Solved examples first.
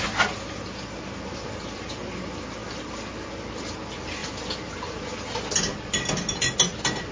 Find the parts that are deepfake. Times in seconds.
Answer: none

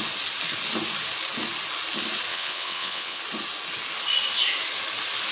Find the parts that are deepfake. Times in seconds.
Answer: 2.3-3.2

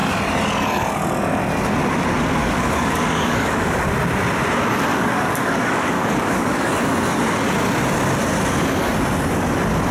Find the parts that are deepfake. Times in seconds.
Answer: 2.4-3.8; 4.9-6.7

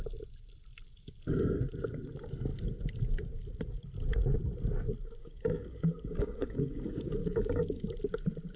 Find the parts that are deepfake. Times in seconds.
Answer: 5.2-7.8

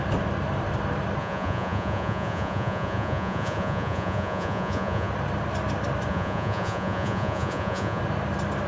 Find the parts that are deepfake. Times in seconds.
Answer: 1.2-5.1; 6.1-8.0

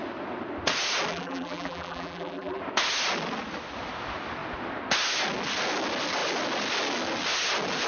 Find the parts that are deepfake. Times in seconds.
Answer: 1.1-2.6

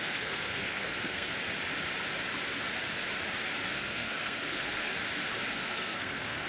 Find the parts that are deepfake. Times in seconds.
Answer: 0.0-1.3; 3.7-4.9; 5.5-6.5